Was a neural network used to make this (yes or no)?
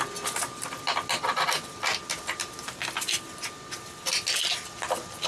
no